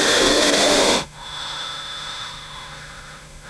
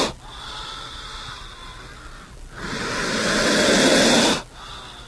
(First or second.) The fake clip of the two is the first